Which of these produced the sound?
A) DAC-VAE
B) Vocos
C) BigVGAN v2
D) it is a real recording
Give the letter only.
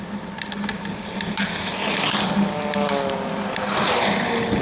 D